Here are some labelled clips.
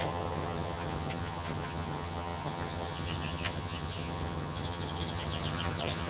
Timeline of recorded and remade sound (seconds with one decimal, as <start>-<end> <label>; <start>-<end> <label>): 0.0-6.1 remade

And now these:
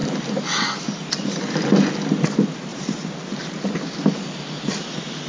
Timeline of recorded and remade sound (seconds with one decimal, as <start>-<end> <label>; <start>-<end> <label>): 0.0-5.3 recorded

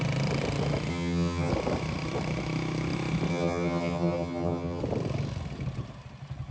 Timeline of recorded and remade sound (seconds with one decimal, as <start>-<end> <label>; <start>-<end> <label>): 0.0-0.9 recorded; 0.9-1.5 remade; 1.5-3.3 recorded; 3.3-4.8 remade; 4.8-6.5 recorded

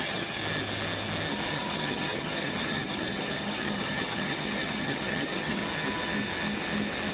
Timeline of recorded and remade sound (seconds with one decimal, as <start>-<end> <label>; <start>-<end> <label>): 0.0-0.4 remade; 0.4-1.5 recorded; 1.5-5.6 remade; 5.6-7.1 recorded